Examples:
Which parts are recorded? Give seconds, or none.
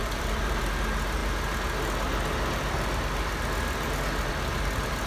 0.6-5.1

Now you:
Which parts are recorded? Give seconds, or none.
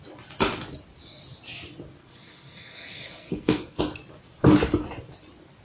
0.0-2.0; 3.8-5.6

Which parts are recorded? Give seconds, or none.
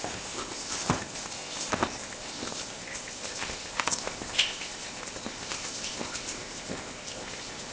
none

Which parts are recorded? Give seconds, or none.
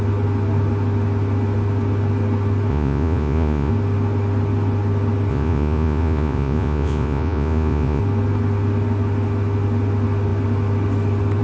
0.0-2.7; 3.7-5.3; 8.0-11.4